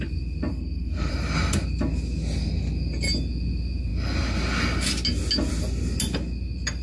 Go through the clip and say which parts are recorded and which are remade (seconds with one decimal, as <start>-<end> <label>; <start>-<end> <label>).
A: 0.0-0.5 recorded; 0.5-1.1 remade; 1.1-6.8 recorded